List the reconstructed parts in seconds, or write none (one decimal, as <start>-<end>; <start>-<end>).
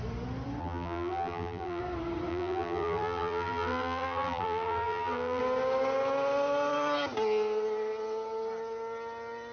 0.6-1.8; 2.3-5.4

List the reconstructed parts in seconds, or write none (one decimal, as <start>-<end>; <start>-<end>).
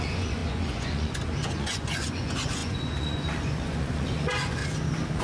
0.0-4.6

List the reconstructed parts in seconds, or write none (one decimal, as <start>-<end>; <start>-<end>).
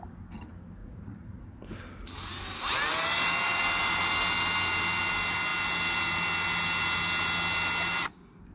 0.8-1.4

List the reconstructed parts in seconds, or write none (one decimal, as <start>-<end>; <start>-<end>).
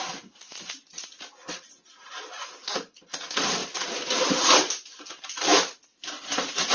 3.6-4.3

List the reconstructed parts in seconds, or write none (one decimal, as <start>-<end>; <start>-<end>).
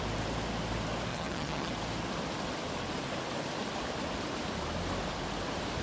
1.1-1.7